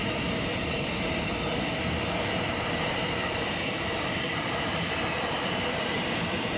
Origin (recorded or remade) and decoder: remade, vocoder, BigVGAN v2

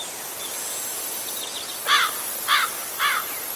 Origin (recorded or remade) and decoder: recorded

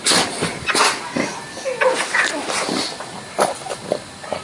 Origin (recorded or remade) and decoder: remade, vocoder, BigVGAN v2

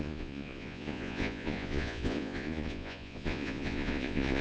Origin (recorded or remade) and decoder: remade, vocoder, Vocos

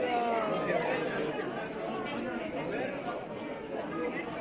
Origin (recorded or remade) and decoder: recorded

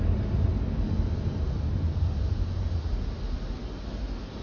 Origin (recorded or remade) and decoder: recorded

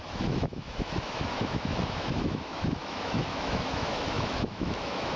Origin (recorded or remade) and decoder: remade, autoencoder, DAC-VAE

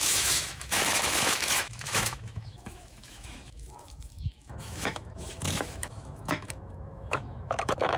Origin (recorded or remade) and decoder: remade, autoencoder, DAC-VAE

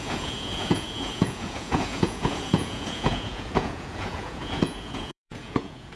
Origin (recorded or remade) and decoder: remade, vocoder, Vocos